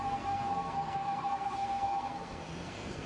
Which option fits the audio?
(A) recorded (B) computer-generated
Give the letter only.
B